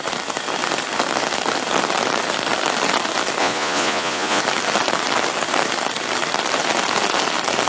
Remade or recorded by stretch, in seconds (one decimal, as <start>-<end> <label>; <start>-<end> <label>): 0.0-3.4 recorded; 3.4-4.4 remade; 4.4-7.7 recorded